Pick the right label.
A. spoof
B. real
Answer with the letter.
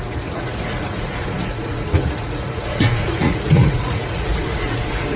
A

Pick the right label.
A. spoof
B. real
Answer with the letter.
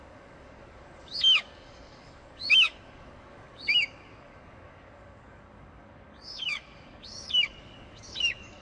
A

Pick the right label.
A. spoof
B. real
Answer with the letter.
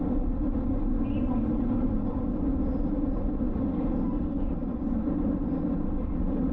B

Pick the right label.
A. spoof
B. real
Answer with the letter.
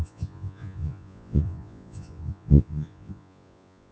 A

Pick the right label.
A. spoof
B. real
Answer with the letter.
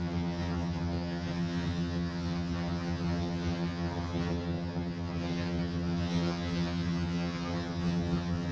A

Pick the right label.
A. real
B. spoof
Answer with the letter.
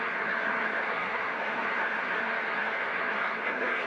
B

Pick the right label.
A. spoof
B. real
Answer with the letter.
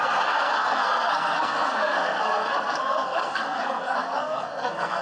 A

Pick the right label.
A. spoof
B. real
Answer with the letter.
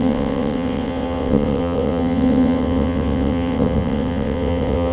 A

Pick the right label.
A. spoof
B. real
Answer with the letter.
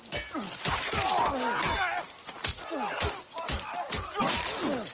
B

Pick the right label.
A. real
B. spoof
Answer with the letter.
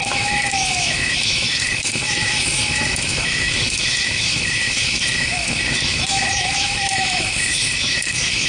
B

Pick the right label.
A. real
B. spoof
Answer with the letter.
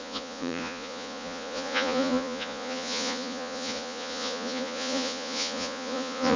B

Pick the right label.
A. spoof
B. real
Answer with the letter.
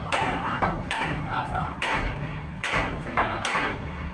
A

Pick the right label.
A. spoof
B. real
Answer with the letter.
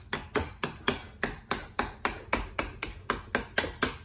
B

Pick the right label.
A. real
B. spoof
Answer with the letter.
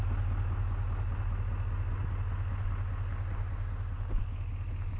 A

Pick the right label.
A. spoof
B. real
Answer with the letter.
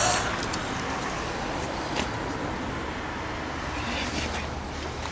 B